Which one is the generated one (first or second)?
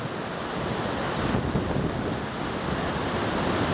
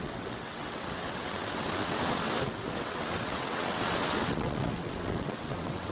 second